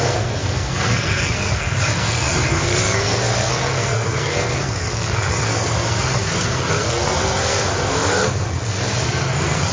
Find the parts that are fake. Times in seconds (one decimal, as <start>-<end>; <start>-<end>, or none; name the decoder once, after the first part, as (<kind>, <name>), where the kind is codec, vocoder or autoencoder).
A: 0.0-9.7 (codec, SNAC)